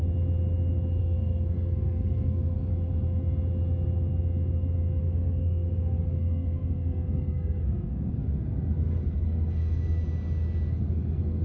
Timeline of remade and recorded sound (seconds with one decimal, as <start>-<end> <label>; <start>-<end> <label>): 0.0-1.0 recorded; 1.0-2.7 remade; 2.7-5.0 recorded; 5.0-10.0 remade; 10.0-10.7 recorded; 10.7-11.4 remade